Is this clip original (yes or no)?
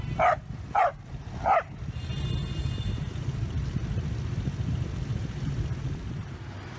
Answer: yes